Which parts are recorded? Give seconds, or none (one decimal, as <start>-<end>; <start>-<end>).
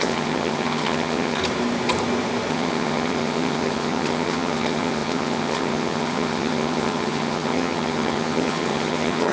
1.4-2.5